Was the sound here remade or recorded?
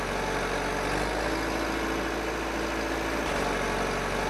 recorded